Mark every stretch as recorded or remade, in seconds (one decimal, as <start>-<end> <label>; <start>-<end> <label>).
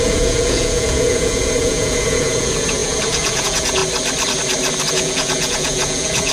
0.0-3.8 remade; 3.8-4.9 recorded; 4.9-6.3 remade